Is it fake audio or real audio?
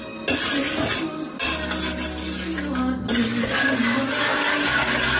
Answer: real